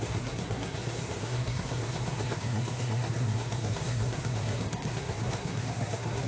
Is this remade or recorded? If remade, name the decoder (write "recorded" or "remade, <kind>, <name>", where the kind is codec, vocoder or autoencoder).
remade, codec, SNAC